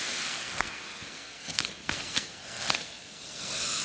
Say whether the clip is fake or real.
fake